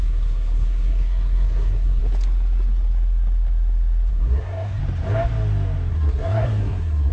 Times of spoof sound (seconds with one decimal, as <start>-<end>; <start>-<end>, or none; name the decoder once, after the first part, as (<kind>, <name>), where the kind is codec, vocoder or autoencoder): 0.0-2.0 (codec, SNAC); 4.1-4.8; 5.9-7.1